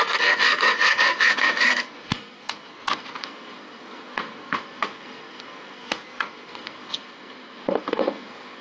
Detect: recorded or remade remade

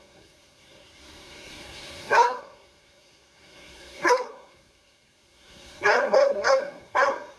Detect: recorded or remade remade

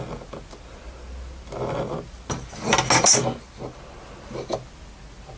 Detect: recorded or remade recorded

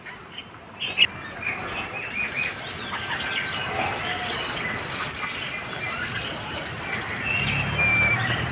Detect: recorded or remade recorded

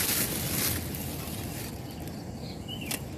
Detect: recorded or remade recorded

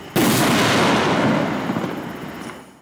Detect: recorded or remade recorded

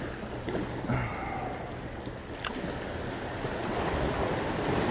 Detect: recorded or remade recorded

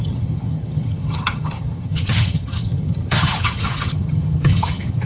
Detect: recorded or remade remade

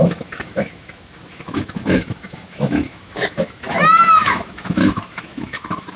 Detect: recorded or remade remade